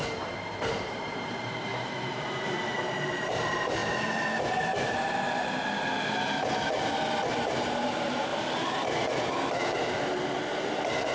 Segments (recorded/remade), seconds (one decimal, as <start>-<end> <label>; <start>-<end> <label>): 0.0-3.8 remade; 3.8-7.3 recorded; 7.3-8.3 remade; 8.3-10.5 recorded; 10.5-11.1 remade